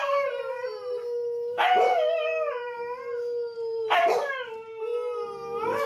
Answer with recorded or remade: recorded